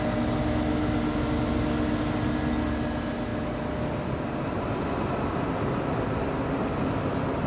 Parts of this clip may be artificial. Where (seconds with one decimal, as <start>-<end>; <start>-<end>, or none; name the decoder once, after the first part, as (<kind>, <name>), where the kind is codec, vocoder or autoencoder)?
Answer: none